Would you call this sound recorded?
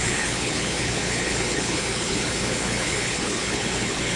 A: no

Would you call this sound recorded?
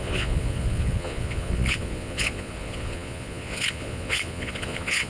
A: no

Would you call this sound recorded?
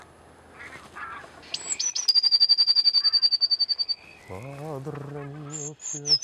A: yes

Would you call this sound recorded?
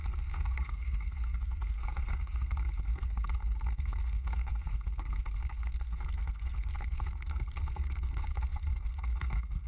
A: no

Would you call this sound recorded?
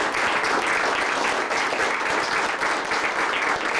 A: yes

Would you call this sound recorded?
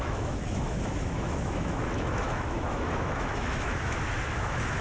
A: no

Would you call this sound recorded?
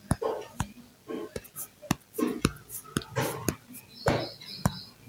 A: yes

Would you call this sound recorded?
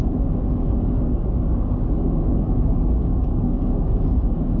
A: no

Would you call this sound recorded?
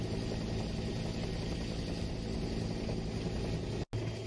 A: yes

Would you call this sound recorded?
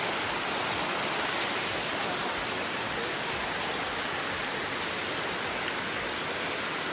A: yes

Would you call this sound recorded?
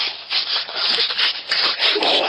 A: yes